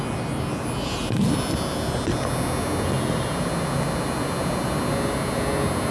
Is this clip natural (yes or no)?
yes